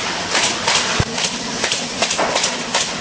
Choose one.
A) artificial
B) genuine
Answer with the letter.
B